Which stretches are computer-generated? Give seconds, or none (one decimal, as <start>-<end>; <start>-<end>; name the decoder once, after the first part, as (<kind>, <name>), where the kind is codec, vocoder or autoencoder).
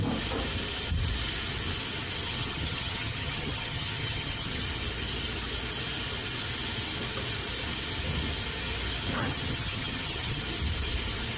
2.4-4.6 (vocoder, HiFi-GAN); 9.2-10.4